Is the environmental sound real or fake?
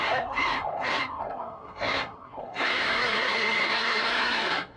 fake